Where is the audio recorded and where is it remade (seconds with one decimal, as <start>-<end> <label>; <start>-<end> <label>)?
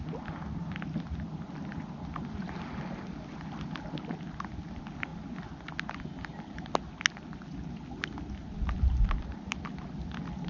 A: 0.0-10.5 recorded